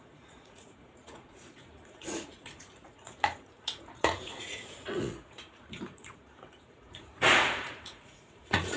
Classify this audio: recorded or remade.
remade